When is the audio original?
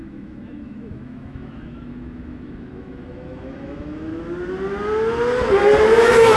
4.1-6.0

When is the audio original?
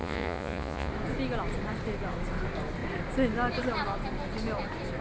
0.9-5.0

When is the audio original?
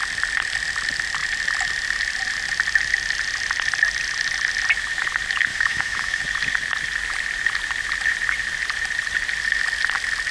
0.0-5.5; 6.2-10.3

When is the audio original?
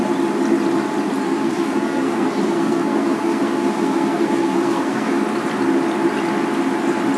0.0-1.2; 5.2-7.2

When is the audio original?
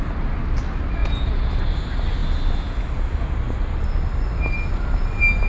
0.0-1.0; 1.5-5.5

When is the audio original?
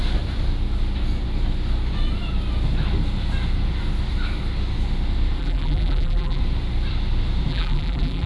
0.0-5.4; 6.4-7.5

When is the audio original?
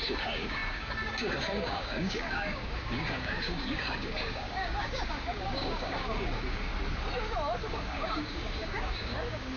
6.7-7.7